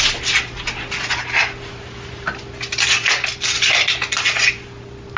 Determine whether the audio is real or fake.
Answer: real